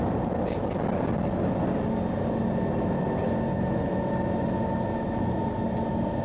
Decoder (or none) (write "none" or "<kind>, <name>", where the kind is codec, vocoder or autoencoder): none